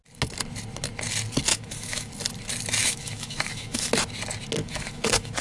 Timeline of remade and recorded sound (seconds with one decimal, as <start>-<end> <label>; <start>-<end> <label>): 0.0-1.5 recorded; 1.5-2.1 remade; 2.1-2.8 recorded; 2.8-3.9 remade; 3.9-4.6 recorded; 4.6-5.4 remade